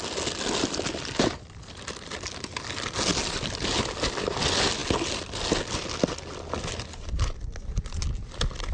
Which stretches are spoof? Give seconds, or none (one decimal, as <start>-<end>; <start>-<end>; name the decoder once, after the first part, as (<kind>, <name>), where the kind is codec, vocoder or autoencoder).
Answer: none